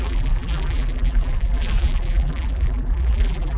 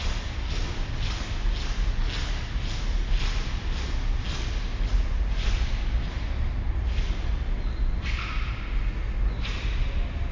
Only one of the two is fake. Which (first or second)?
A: first